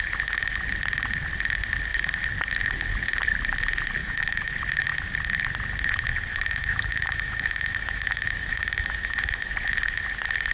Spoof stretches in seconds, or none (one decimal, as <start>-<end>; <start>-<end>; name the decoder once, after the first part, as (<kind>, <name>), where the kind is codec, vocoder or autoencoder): 4.0-4.5 (autoencoder, DAC-VAE); 6.3-9.5

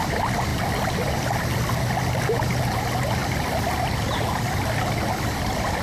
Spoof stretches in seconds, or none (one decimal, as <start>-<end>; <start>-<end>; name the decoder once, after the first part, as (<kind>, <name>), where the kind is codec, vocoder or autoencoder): none

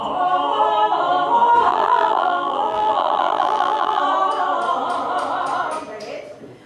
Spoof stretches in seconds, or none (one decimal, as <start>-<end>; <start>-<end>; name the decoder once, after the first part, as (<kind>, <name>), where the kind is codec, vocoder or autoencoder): 1.7-4.0 (vocoder, BigVGAN v2)

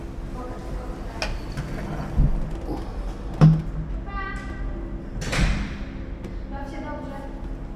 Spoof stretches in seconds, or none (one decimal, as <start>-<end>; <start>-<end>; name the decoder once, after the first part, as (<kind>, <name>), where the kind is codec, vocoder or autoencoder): none

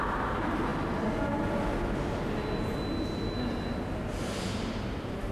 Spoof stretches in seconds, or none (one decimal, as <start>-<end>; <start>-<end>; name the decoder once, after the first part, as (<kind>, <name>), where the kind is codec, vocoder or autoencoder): none